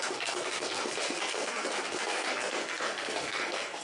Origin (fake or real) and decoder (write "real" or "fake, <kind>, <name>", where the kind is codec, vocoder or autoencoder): fake, codec, SNAC